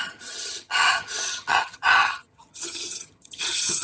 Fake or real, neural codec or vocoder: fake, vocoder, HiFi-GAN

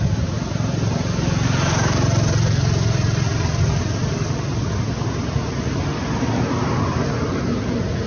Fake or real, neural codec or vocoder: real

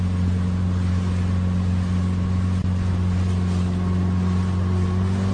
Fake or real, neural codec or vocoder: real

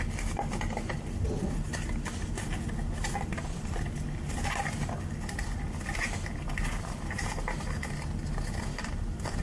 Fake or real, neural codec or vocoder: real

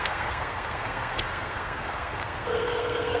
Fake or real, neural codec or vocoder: fake, codec, SNAC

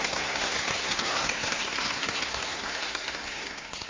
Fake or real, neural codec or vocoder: fake, codec, SNAC